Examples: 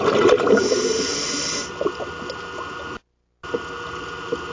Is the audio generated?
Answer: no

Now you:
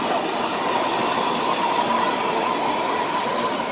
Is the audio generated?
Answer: no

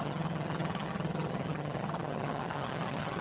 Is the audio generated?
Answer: yes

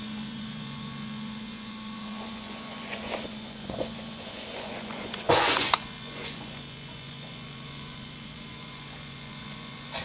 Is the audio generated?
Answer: yes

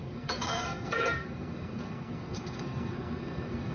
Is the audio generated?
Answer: yes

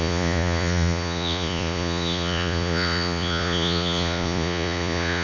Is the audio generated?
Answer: yes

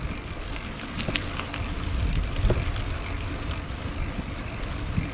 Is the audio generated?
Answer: no